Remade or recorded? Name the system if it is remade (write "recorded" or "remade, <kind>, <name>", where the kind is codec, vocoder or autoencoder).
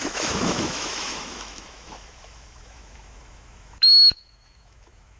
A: remade, autoencoder, DAC-VAE